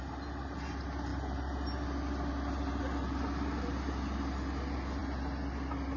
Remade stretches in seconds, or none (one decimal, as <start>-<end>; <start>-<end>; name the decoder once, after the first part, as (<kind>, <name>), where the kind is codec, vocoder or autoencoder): none